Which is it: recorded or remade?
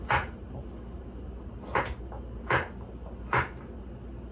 recorded